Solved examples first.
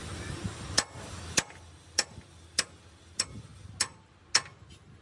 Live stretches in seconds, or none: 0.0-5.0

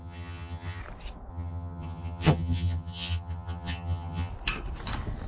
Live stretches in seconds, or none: 0.8-1.3; 4.3-5.3

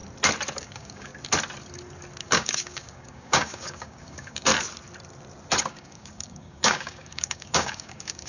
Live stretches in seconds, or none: 0.0-0.6; 1.1-2.2; 4.5-5.7

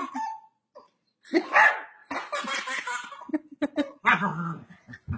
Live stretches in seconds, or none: 2.0-3.6; 4.3-5.2

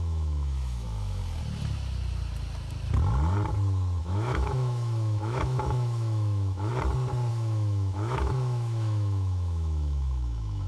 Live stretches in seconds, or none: 1.2-4.0; 6.7-7.3